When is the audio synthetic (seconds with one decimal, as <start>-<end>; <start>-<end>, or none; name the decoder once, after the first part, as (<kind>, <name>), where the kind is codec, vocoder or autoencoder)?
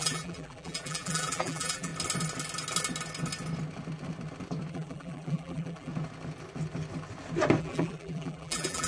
0.0-1.9 (vocoder, BigVGAN v2); 4.7-5.9; 7.6-8.9